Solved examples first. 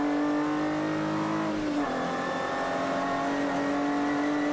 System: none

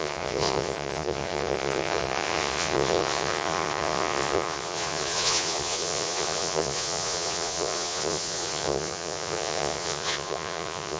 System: vocoder, Vocos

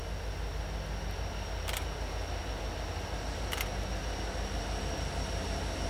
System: none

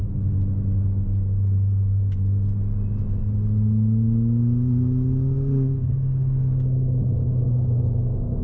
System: none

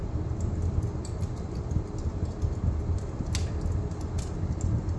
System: none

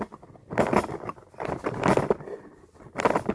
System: none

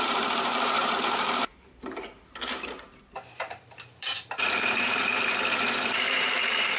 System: vocoder, BigVGAN v2